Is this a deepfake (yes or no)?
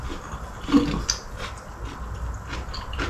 no